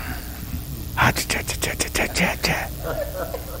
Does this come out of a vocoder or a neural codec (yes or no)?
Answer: no